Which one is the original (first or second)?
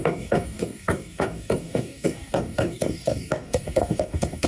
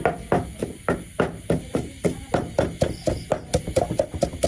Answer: second